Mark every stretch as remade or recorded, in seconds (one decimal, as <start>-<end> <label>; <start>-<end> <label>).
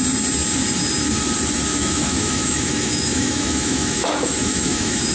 0.0-1.7 recorded; 1.7-5.1 remade